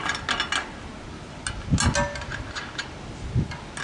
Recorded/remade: recorded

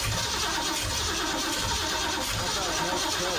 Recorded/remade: recorded